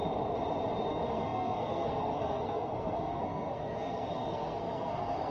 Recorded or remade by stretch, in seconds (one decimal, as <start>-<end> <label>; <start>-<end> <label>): 0.0-0.9 recorded; 0.9-5.3 remade